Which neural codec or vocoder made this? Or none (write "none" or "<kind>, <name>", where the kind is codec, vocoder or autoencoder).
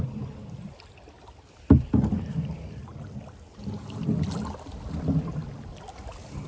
none